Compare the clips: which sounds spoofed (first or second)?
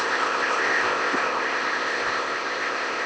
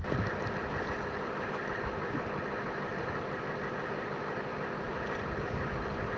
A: first